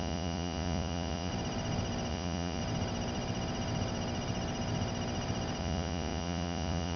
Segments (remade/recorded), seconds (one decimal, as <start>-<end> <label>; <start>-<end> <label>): 0.0-1.3 remade; 1.3-2.1 recorded; 2.1-2.6 remade; 2.6-5.6 recorded; 5.6-7.0 remade